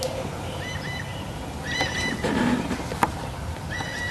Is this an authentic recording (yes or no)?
yes